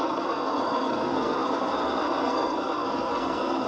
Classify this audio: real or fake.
fake